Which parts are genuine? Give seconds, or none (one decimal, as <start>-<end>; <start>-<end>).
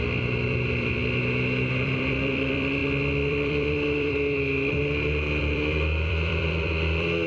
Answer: 1.0-1.7; 2.8-3.3; 4.8-5.4